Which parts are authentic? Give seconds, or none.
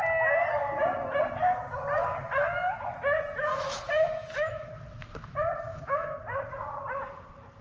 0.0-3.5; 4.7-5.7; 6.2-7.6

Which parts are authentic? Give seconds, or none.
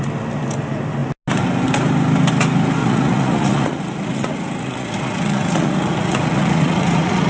0.0-2.8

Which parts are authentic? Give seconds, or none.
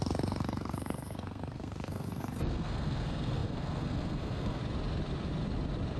4.6-6.0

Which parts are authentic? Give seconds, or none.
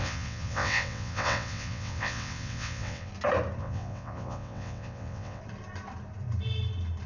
3.1-3.6; 5.4-7.1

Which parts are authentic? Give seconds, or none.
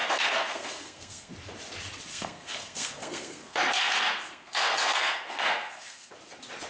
1.3-2.1; 6.1-6.7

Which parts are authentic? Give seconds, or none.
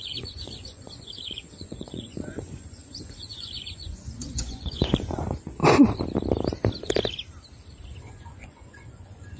5.6-8.0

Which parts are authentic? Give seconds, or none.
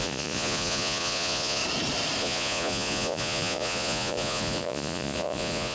1.6-2.2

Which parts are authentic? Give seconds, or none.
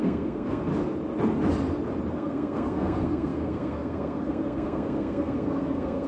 0.7-2.1